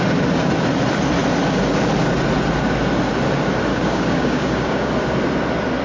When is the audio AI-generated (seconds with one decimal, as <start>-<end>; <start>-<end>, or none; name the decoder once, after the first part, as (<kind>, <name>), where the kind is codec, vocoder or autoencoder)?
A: 3.7-4.9 (codec, DAC)